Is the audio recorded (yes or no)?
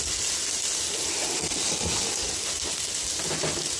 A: yes